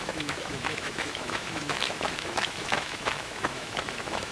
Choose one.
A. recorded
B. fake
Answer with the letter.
B